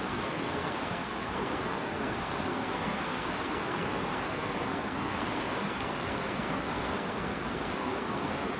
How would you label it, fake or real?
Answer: fake